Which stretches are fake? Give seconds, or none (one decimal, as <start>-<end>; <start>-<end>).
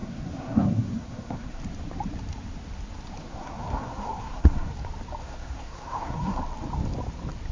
0.0-1.6; 3.2-4.7; 5.2-6.4